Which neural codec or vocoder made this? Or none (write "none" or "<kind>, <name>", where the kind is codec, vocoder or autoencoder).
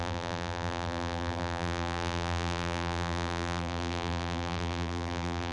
vocoder, BigVGAN v2